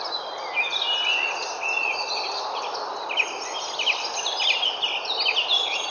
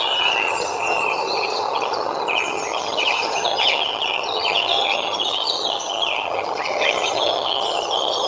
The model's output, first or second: second